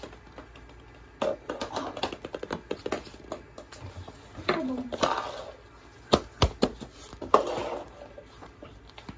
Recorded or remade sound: recorded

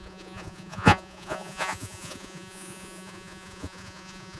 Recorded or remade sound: remade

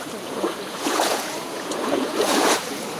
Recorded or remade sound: remade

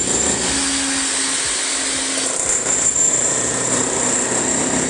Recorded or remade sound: recorded